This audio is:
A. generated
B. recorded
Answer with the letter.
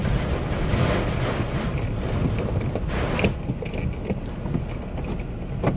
B